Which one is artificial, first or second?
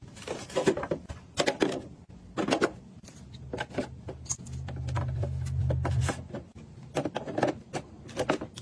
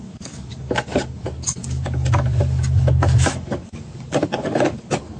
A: second